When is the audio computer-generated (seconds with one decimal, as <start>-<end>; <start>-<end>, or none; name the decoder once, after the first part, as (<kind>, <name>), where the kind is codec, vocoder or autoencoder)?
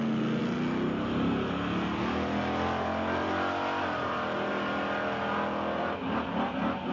none